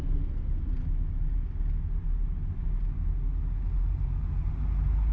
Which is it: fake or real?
real